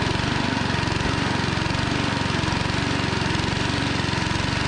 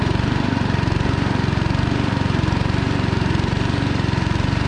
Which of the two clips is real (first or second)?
first